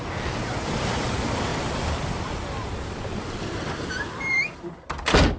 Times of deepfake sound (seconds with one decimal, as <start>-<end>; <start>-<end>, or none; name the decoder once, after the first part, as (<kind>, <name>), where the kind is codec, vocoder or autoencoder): none